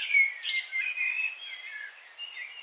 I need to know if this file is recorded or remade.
recorded